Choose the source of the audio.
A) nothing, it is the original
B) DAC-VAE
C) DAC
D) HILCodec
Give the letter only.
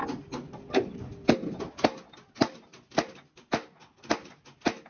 A